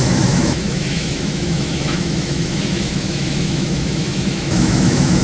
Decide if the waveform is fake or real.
fake